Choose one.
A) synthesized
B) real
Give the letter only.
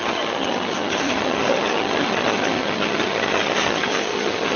A